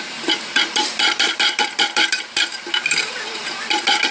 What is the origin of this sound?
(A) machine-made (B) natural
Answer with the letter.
A